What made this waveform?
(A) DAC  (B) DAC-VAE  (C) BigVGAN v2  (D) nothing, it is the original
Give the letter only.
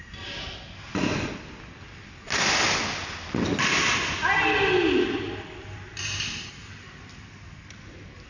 D